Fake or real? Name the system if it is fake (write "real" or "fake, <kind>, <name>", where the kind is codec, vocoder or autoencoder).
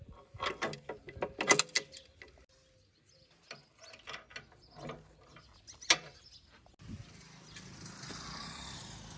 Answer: real